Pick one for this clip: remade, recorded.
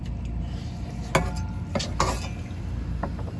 recorded